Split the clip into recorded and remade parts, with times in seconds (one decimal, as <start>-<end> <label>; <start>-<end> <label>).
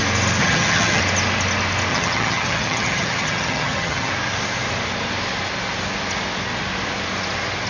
0.0-0.4 recorded; 0.4-1.0 remade; 1.0-1.9 recorded; 1.9-4.1 remade; 4.1-7.7 recorded